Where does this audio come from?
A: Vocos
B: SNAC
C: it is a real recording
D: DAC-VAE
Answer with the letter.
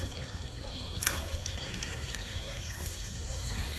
B